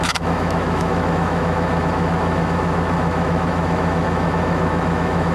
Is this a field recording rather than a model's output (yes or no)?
no